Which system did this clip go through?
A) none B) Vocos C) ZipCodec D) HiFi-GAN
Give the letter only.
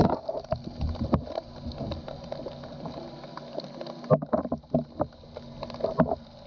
A